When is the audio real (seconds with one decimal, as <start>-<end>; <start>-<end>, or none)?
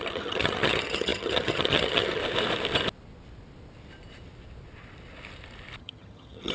2.2-5.8